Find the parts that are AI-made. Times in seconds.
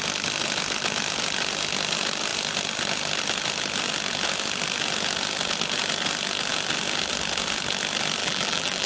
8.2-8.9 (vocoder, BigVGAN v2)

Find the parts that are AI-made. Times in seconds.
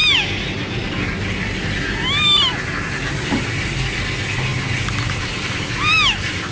none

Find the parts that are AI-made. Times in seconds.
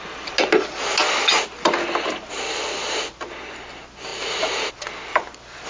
none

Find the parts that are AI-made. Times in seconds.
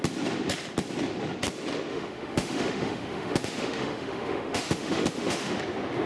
1.9-5.6 (autoencoder, DAC-VAE)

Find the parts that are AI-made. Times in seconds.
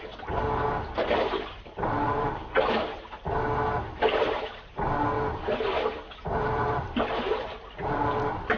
1.0-2.3 (vocoder, BigVGAN v2); 6.4-8.6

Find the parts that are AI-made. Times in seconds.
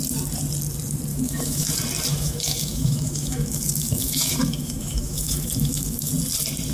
1.1-1.7 (autoencoder, DAC-VAE); 2.1-6.1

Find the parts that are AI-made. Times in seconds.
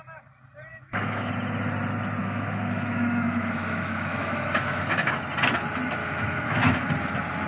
0.7-1.3 (autoencoder, DAC-VAE); 2.2-5.2; 6.0-6.9